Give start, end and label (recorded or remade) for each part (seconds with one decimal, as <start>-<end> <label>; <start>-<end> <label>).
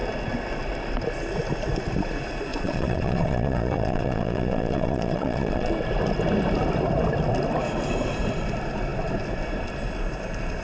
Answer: 0.0-2.5 recorded; 2.5-5.7 remade; 5.7-10.6 recorded